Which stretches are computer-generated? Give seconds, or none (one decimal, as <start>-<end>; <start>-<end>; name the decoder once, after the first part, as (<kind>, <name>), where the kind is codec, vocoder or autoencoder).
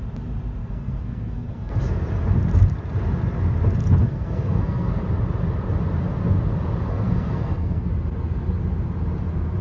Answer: 0.6-1.8 (codec, SNAC); 4.0-5.0; 6.9-7.9